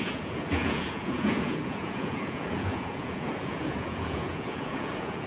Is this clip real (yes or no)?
no